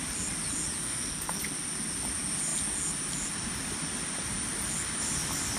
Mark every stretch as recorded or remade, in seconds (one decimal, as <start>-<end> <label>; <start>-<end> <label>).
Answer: 0.0-0.8 recorded; 0.8-1.4 remade; 1.4-5.6 recorded